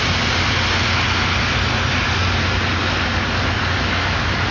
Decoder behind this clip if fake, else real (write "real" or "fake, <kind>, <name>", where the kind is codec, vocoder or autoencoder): real